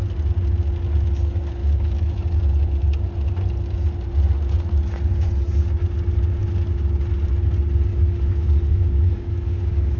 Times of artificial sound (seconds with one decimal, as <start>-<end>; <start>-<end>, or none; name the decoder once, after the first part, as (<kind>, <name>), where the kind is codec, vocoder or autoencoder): 1.6-2.1 (codec, DAC); 7.9-10.0